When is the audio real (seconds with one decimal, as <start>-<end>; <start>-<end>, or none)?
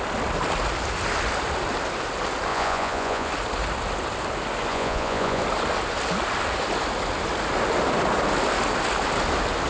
0.0-2.5; 3.3-4.7; 5.4-9.7